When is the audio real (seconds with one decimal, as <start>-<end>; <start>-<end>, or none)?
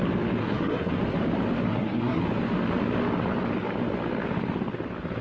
0.0-0.4; 1.0-1.7; 2.2-5.2